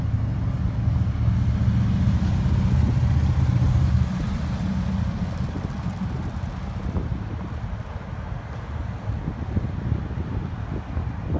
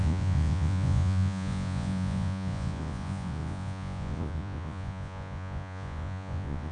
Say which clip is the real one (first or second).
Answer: first